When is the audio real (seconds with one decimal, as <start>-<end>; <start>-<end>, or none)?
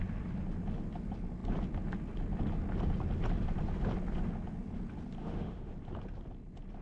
0.0-5.2; 5.7-6.8